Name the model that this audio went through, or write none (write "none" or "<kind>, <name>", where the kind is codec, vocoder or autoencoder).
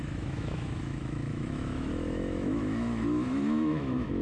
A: autoencoder, DAC-VAE